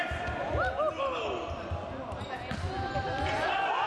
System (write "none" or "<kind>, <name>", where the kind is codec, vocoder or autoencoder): none